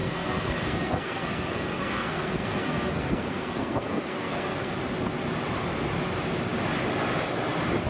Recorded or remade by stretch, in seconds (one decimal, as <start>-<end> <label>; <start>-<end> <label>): 0.0-4.7 remade; 4.7-7.9 recorded